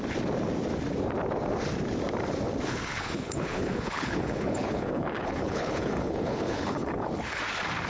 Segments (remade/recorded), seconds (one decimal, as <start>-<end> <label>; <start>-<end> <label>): 0.0-2.7 recorded; 2.7-7.4 remade; 7.4-7.9 recorded